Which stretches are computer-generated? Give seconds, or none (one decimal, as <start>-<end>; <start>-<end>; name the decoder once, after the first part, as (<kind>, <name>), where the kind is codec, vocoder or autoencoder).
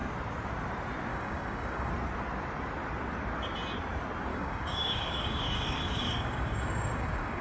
1.1-1.9 (codec, DAC); 4.3-7.4